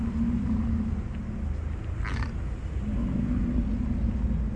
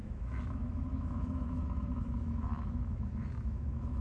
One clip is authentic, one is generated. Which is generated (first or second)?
second